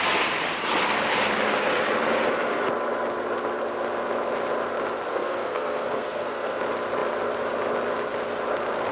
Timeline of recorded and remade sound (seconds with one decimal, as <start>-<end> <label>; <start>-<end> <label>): 0.0-5.1 recorded; 5.1-6.6 remade; 6.6-8.9 recorded

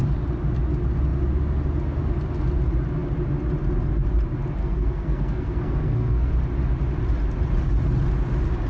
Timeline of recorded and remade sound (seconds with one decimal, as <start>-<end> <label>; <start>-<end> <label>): 0.0-4.6 recorded; 4.6-6.3 remade; 6.3-8.7 recorded

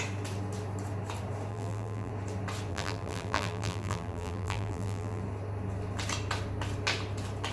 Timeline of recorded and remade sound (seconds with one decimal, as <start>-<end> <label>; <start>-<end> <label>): 0.0-1.5 recorded; 1.5-2.1 remade; 2.1-2.7 recorded; 2.7-5.2 remade; 5.2-7.5 recorded

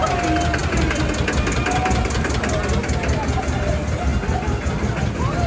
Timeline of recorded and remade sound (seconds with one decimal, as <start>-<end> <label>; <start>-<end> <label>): 0.0-5.5 recorded

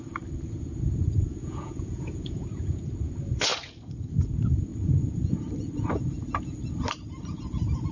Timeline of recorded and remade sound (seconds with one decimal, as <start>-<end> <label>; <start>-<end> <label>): 0.0-1.4 recorded; 1.4-2.8 remade; 2.8-7.9 recorded

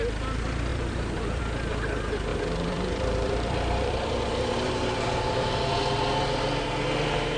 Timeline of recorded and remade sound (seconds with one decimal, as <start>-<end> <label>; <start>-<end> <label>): 0.0-0.7 recorded; 0.7-1.4 remade; 1.4-2.3 recorded; 2.3-5.8 remade; 5.8-7.4 recorded

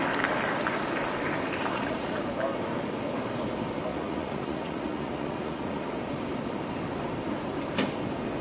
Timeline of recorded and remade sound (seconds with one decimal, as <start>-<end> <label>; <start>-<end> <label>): 0.0-1.7 recorded; 1.7-2.2 remade; 2.2-3.9 recorded; 3.9-5.9 remade; 5.9-8.4 recorded

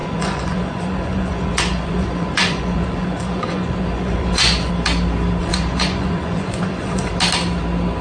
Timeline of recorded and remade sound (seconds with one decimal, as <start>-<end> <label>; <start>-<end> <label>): 0.0-4.7 remade; 4.7-5.4 recorded; 5.4-7.1 remade; 7.1-8.0 recorded